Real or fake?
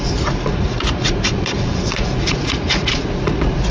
fake